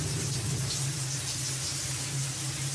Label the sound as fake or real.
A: real